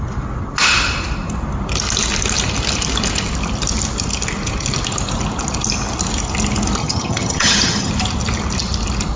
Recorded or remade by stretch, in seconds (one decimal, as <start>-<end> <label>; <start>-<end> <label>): 0.0-6.8 recorded; 6.8-7.9 remade; 7.9-9.2 recorded